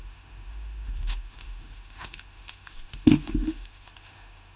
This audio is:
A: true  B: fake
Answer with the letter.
B